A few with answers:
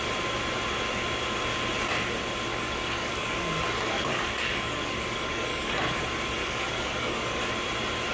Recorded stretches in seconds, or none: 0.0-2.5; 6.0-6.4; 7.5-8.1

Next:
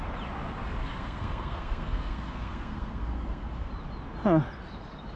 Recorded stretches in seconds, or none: 0.0-0.8; 3.7-5.2

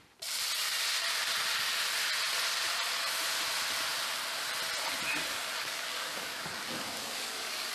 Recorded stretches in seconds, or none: 0.0-5.3

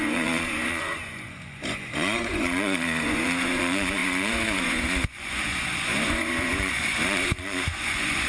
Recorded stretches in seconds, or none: none

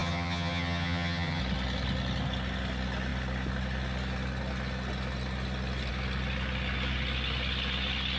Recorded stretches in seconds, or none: 1.4-8.2